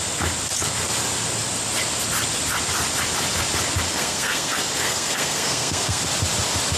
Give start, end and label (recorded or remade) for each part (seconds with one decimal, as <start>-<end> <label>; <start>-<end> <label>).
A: 0.0-3.9 recorded; 3.9-6.0 remade; 6.0-6.8 recorded